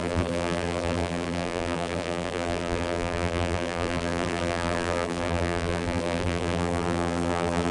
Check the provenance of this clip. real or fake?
fake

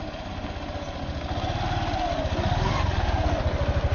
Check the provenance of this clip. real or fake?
real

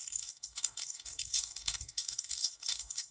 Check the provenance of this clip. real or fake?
fake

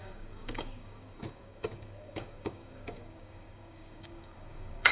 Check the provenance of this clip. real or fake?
fake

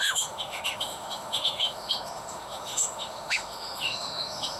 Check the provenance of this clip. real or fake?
fake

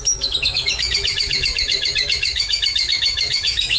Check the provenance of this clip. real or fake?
fake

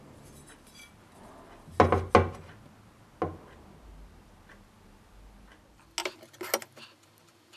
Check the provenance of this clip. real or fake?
real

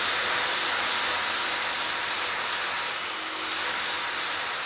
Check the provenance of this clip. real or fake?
real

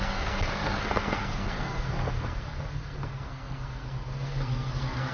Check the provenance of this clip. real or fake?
fake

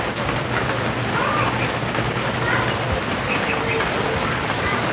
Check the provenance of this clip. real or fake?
real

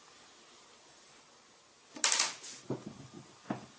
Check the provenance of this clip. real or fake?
real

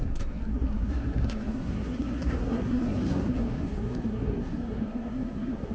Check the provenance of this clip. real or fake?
fake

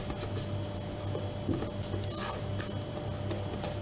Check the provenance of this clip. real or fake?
real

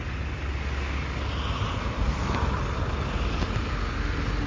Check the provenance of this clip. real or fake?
real